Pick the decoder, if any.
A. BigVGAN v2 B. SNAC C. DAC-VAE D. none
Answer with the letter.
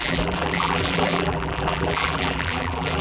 A